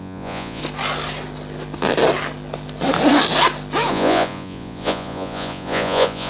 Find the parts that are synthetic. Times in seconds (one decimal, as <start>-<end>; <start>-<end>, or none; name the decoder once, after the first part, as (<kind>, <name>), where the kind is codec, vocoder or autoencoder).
0.0-0.6 (vocoder, Vocos); 3.9-6.3